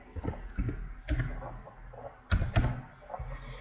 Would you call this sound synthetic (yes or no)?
no